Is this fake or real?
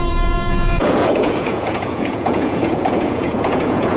fake